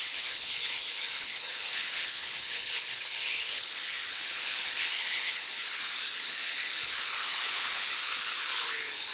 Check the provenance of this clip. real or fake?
fake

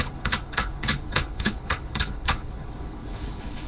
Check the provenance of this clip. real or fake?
fake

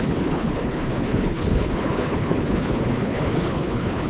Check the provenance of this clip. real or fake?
fake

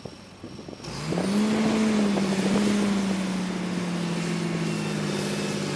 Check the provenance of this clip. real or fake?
real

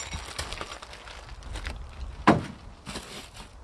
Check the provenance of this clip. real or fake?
real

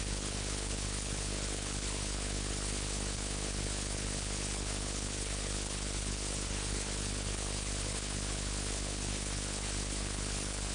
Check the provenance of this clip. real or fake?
fake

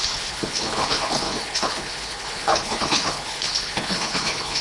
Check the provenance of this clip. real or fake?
fake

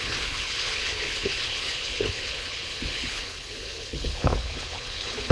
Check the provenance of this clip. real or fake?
fake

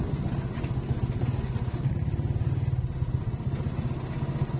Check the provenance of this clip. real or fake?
real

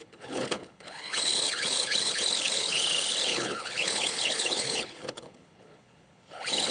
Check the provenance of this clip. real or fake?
fake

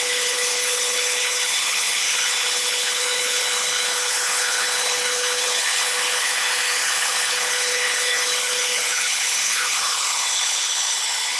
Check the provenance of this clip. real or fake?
fake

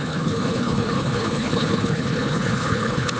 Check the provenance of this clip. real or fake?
fake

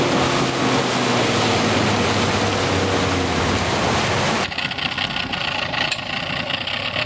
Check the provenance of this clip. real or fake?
real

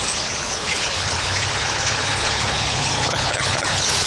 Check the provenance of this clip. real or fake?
fake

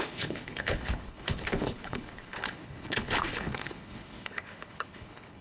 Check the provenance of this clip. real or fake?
fake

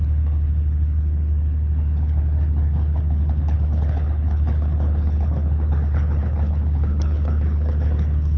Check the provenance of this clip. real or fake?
fake